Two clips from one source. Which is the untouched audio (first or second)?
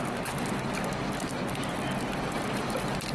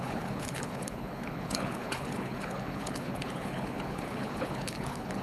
first